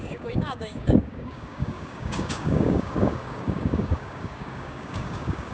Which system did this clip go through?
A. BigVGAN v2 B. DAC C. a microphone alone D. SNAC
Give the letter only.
B